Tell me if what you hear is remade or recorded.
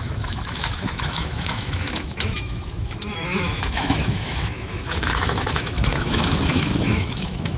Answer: remade